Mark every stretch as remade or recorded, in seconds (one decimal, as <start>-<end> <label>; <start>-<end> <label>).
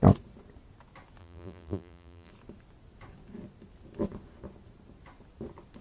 0.0-1.2 recorded; 1.2-2.3 remade; 2.3-5.8 recorded